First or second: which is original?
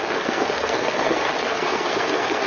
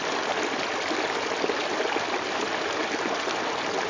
second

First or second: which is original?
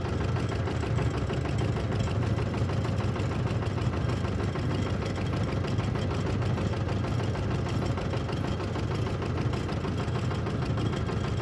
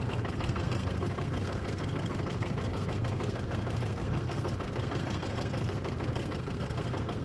first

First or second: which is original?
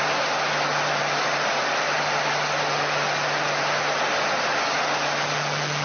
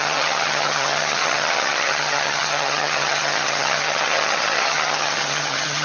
first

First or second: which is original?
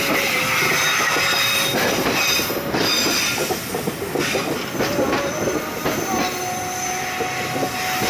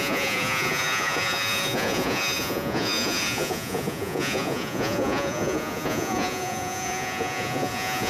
first